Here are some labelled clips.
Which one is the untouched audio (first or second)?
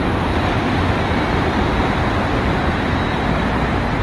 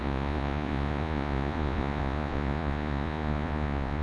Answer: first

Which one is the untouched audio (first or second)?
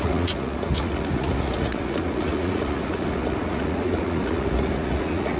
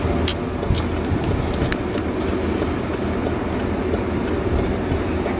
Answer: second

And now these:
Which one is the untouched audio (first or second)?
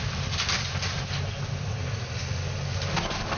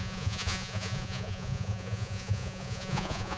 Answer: first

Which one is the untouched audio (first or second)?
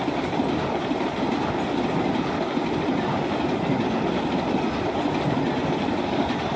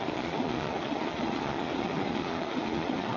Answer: first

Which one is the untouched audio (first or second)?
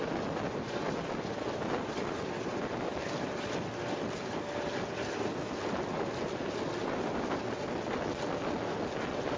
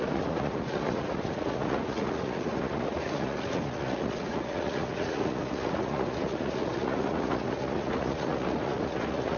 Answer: first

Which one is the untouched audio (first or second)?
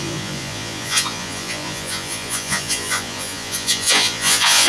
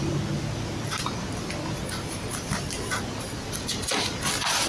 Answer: second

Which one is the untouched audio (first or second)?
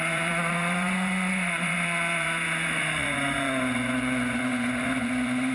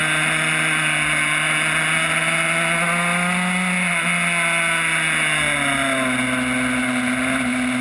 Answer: second